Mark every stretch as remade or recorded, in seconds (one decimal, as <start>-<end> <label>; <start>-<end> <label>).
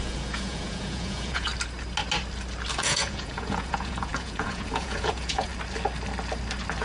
0.0-1.5 remade; 1.5-2.8 recorded; 2.8-5.5 remade; 5.5-6.8 recorded